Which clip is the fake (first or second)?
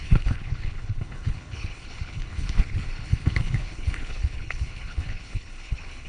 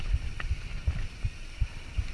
first